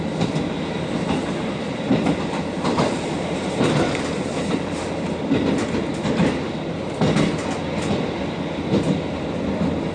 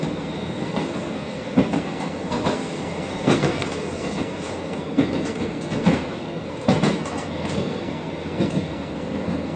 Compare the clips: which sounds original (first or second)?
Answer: first